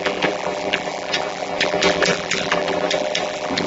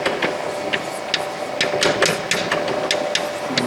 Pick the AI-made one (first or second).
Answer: first